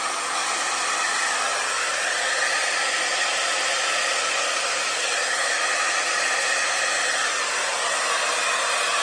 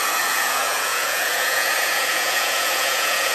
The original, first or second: first